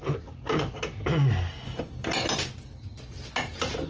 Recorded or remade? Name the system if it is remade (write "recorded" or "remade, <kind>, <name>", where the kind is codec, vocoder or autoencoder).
recorded